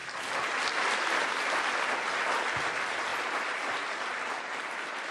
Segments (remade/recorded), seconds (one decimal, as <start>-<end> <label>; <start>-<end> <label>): 0.0-3.1 recorded; 3.1-4.1 remade; 4.1-5.1 recorded